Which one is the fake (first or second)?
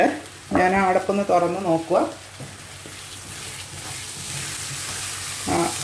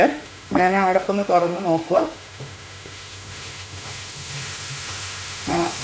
second